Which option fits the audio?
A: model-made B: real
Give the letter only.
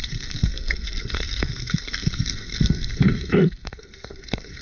A